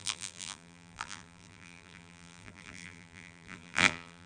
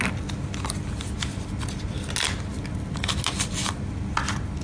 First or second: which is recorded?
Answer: second